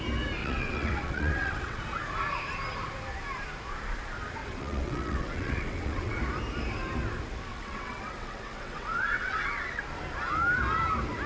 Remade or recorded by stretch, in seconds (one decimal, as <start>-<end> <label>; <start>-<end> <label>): 0.0-0.4 recorded; 0.4-1.8 remade; 1.8-4.4 recorded; 4.4-6.2 remade; 6.2-7.5 recorded; 7.5-9.8 remade; 9.8-11.3 recorded